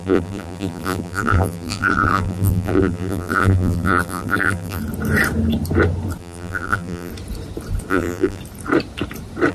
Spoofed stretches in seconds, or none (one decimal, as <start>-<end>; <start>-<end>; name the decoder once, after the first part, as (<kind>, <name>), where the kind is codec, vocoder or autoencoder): 0.0-4.8 (vocoder, BigVGAN v2); 6.2-7.1; 7.9-8.4